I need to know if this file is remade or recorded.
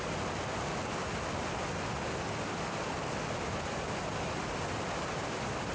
recorded